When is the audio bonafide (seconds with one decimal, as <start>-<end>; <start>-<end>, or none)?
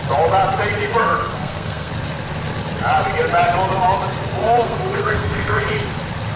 0.0-1.0; 1.9-4.4; 5.7-6.4